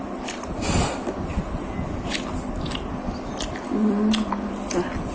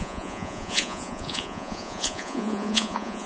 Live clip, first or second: first